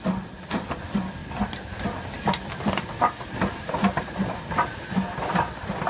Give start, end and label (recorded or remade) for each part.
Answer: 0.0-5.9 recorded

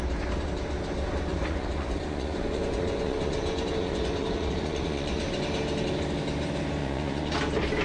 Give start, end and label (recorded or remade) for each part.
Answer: 0.0-1.3 recorded; 1.3-5.2 remade; 5.2-6.8 recorded; 6.8-7.3 remade; 7.3-7.8 recorded

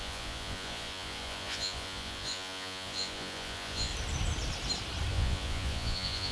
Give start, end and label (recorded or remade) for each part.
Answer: 0.0-3.9 remade; 3.9-5.1 recorded; 5.1-6.3 remade